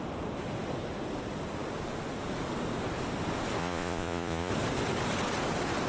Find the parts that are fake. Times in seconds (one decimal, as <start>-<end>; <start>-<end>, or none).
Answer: 3.6-4.5

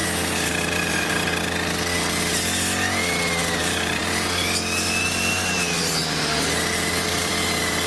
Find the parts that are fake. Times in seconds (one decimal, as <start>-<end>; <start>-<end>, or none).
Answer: 0.0-1.3; 3.4-4.0; 5.8-7.3

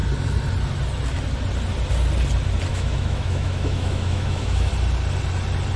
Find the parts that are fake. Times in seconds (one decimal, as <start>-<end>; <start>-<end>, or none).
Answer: 2.7-4.7